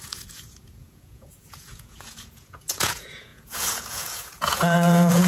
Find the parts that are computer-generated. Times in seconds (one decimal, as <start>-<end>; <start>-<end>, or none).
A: 0.0-5.3